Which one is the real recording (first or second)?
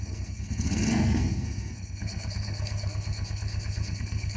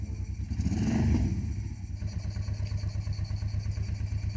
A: second